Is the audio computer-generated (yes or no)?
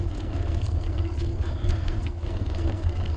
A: yes